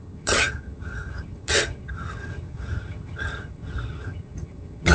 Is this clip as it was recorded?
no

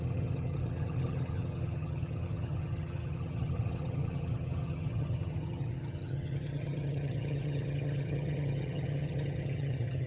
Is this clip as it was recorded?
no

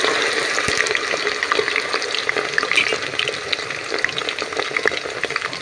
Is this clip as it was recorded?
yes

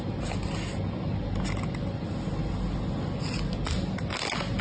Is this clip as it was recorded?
yes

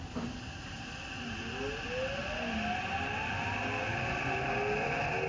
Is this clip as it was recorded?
yes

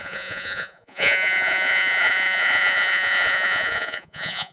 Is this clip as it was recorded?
no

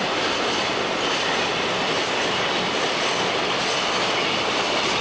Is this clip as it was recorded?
yes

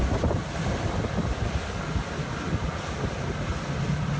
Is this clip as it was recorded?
yes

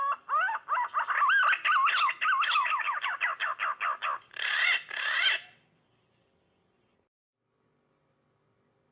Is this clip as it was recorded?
yes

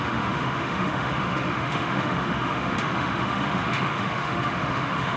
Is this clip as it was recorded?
no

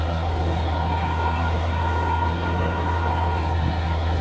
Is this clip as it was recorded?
no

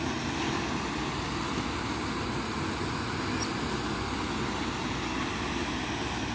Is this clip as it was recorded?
yes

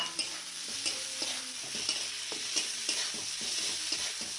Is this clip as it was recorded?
yes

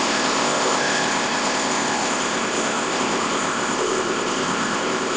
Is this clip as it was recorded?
no